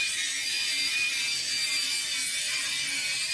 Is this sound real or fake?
fake